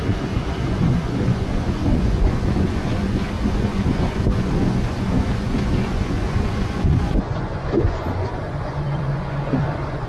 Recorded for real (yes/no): no